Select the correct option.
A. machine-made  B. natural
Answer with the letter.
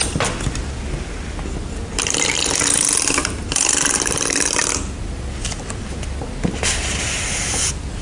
B